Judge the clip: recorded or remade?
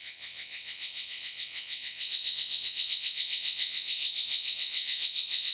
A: remade